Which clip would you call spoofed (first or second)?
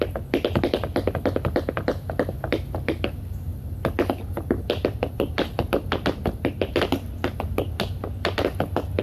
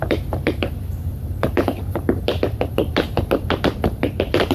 second